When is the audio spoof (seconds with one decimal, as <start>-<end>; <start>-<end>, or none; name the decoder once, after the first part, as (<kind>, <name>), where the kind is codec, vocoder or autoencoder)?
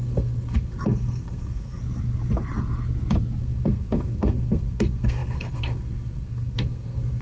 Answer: 0.0-1.8 (codec, SNAC); 3.4-7.2